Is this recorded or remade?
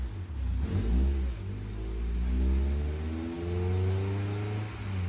recorded